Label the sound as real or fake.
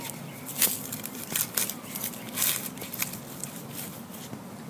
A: real